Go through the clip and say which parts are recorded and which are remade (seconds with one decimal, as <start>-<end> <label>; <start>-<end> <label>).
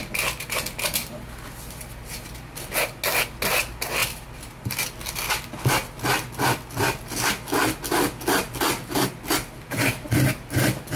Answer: 0.0-11.0 recorded